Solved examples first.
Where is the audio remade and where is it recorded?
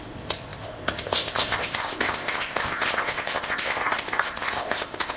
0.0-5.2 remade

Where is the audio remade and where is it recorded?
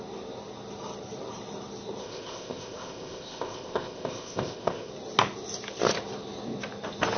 0.0-2.0 recorded; 2.0-4.9 remade; 4.9-7.2 recorded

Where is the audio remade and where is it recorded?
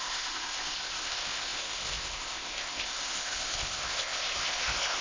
0.0-5.0 remade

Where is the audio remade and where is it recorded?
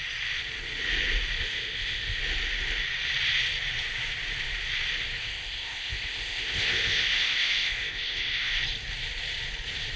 0.0-1.4 recorded; 1.4-2.2 remade; 2.2-5.2 recorded; 5.2-8.6 remade; 8.6-10.0 recorded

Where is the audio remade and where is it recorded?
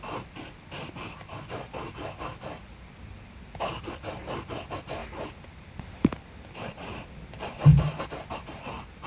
0.0-9.1 recorded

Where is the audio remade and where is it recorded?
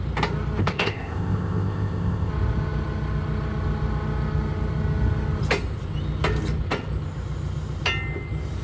0.0-0.6 recorded; 0.6-2.3 remade; 2.3-8.6 recorded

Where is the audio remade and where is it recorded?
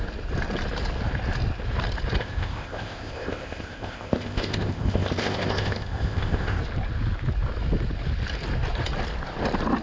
0.0-2.2 recorded; 2.2-6.6 remade; 6.6-9.8 recorded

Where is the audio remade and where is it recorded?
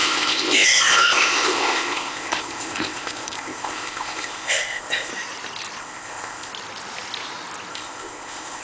0.0-5.1 remade; 5.1-5.8 recorded; 5.8-6.5 remade; 6.5-7.7 recorded; 7.7-8.6 remade